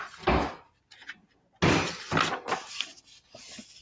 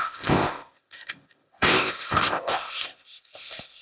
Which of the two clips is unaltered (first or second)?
first